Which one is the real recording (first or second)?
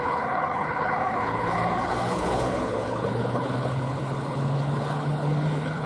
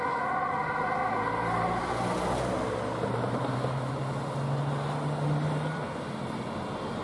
second